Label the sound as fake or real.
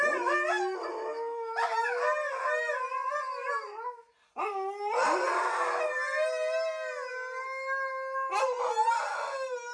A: real